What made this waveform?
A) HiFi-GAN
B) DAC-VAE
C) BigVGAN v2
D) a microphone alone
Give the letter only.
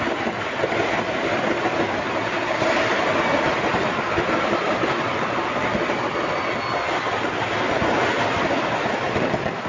D